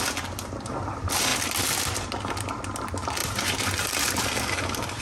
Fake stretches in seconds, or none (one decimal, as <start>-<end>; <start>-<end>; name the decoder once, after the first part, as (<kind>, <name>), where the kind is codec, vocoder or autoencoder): none